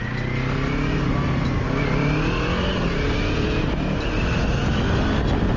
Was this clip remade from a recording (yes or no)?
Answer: no